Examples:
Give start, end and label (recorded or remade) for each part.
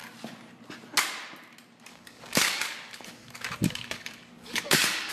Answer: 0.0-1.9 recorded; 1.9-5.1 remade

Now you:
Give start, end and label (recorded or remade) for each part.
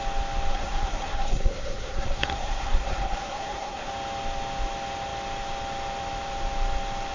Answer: 0.0-0.5 recorded; 0.5-3.9 remade; 3.9-7.1 recorded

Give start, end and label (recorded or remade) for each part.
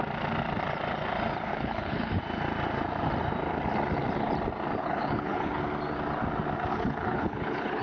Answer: 0.0-1.5 recorded; 1.5-2.2 remade; 2.2-4.8 recorded; 4.8-5.6 remade; 5.6-6.7 recorded; 6.7-7.8 remade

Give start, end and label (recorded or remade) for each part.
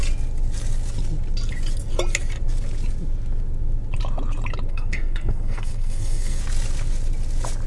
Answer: 0.0-4.7 recorded; 4.7-6.4 remade; 6.4-7.7 recorded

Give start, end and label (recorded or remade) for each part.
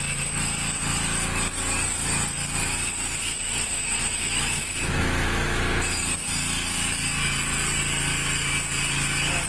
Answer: 0.0-2.6 recorded; 2.6-5.6 remade; 5.6-9.5 recorded